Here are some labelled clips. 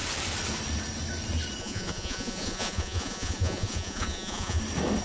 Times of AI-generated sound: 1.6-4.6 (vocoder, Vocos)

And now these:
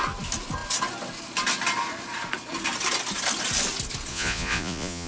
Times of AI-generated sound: 4.1-5.1 (vocoder, Vocos)

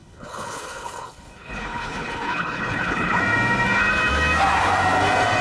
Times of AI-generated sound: 0.0-3.2 (codec, HILCodec)

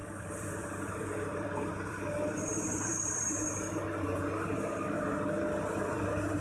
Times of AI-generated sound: 0.0-3.8 (vocoder, BigVGAN v2)

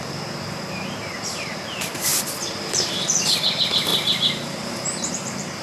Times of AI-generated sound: 0.7-2.1 (vocoder, BigVGAN v2); 2.7-5.6